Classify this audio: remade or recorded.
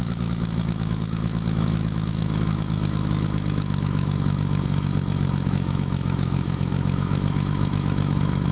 remade